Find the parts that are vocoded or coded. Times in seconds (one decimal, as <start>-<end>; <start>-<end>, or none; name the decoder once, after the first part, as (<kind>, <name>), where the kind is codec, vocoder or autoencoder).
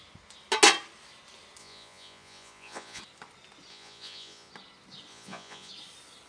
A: 1.6-3.0 (vocoder, Vocos); 3.7-4.5; 5.1-5.7